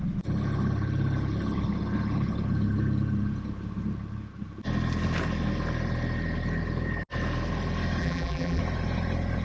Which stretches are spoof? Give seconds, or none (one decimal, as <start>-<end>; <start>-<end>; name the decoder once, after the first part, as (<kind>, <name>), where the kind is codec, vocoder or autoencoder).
8.0-8.6 (vocoder, BigVGAN v2)